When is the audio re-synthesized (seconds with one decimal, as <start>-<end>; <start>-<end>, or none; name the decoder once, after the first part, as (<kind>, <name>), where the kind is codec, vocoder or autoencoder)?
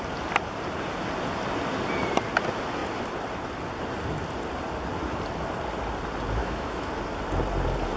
6.4-6.9 (autoencoder, DAC-VAE)